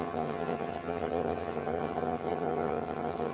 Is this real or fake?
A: fake